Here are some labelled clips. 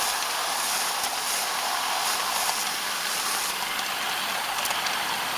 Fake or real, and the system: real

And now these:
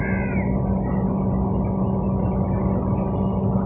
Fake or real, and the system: real